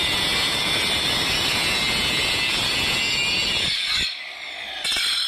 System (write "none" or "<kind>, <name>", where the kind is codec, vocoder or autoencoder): none